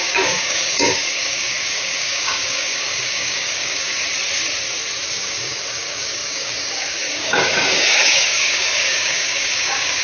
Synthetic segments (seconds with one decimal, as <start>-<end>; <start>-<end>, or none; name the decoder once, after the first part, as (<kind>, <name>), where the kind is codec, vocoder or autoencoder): 0.0-4.0 (codec, DAC); 5.1-10.0